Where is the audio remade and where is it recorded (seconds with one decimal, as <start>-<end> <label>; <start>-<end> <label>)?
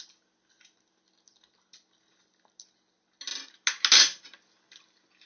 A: 0.0-5.3 recorded